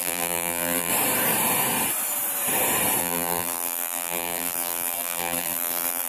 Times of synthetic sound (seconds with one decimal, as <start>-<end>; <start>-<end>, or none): 0.0-0.9; 3.0-6.1